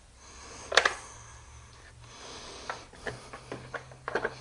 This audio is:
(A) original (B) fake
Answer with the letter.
A